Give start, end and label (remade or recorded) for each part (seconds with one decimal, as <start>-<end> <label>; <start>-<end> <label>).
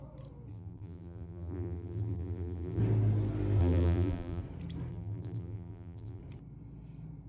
0.0-0.5 recorded; 0.5-2.8 remade; 2.8-3.6 recorded; 3.6-4.4 remade; 4.4-4.9 recorded; 4.9-6.2 remade; 6.2-7.3 recorded